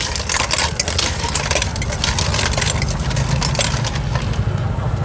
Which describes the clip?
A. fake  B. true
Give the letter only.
B